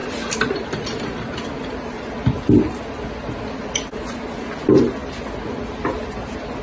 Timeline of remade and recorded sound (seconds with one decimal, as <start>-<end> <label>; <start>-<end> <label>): 0.0-2.8 remade; 2.8-6.6 recorded